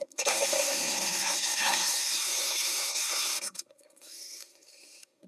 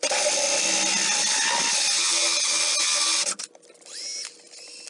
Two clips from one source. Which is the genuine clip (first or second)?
second